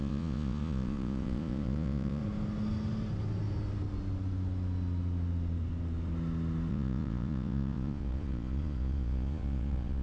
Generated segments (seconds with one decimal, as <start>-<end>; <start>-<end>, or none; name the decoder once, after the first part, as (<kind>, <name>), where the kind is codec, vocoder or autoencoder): 0.0-2.2 (vocoder, Vocos); 6.7-10.0